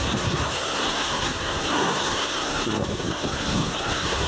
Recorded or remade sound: remade